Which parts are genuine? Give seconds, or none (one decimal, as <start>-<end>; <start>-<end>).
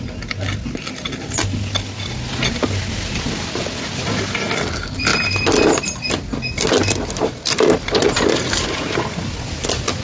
0.0-10.0